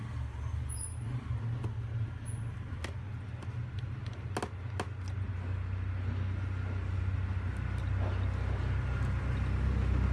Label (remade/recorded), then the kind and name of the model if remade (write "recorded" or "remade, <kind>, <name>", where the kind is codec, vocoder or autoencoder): recorded